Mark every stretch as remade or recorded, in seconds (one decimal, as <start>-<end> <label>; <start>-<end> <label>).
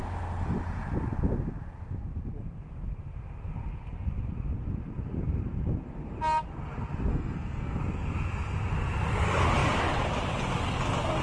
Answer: 0.0-7.1 recorded; 7.1-7.8 remade; 7.8-11.2 recorded